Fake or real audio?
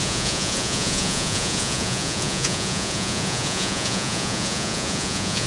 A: fake